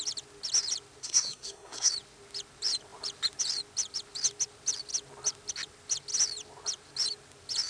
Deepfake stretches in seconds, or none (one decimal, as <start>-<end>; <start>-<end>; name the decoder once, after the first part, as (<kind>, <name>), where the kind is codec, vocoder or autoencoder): 1.0-1.9 (codec, SNAC)